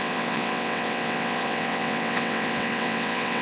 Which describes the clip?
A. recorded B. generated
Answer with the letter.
B